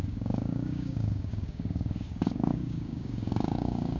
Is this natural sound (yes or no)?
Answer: no